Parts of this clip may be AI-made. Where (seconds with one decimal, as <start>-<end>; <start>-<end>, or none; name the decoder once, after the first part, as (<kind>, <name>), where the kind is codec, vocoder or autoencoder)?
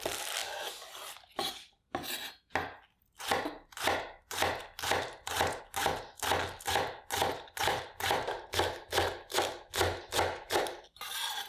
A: none